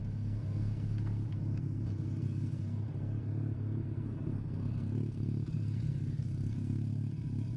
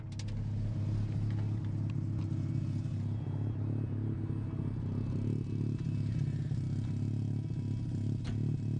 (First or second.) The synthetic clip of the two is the first